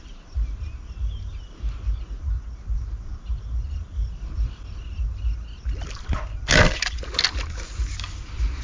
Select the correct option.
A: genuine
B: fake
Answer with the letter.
A